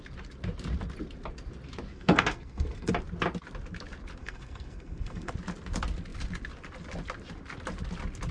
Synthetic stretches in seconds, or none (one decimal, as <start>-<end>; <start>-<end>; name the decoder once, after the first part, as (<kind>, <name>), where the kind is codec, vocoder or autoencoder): 1.9-2.9 (codec, SNAC); 4.2-5.3